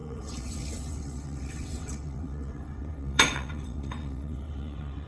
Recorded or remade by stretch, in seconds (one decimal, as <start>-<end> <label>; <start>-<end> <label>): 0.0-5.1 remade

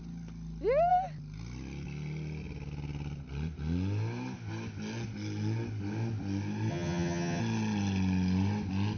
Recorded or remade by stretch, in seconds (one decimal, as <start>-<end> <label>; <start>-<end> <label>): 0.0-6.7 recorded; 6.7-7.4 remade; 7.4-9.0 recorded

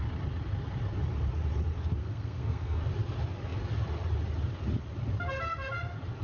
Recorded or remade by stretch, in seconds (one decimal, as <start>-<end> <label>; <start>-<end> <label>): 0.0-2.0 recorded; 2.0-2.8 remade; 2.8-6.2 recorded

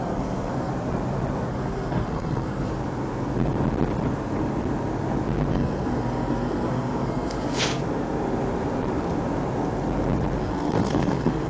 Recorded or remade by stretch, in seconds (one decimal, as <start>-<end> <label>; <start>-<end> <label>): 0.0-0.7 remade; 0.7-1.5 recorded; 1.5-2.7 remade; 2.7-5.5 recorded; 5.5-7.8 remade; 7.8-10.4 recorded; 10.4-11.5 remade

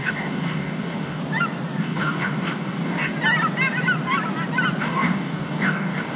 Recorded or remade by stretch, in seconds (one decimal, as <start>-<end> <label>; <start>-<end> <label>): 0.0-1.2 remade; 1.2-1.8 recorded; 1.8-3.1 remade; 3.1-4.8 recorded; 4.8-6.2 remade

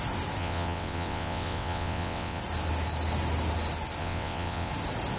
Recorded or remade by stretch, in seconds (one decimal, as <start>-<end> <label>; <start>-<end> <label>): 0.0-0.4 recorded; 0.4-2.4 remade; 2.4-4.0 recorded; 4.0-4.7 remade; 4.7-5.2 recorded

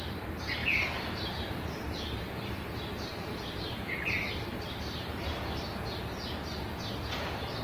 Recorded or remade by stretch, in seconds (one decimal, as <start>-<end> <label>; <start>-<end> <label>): 0.0-0.6 recorded; 0.6-5.2 remade; 5.2-7.6 recorded

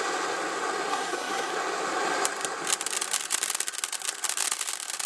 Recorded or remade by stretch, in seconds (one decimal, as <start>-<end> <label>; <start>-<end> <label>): 0.0-0.9 recorded; 0.9-1.5 remade; 1.5-5.1 recorded